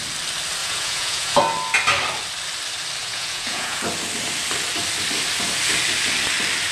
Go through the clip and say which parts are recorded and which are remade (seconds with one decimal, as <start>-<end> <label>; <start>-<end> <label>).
0.0-0.6 recorded; 0.6-1.4 remade; 1.4-3.0 recorded; 3.0-3.8 remade; 3.8-6.7 recorded